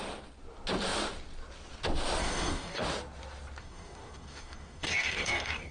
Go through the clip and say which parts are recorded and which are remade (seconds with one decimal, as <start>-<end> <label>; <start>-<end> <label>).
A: 0.0-2.2 recorded; 2.2-2.8 remade; 2.8-3.6 recorded; 3.6-5.7 remade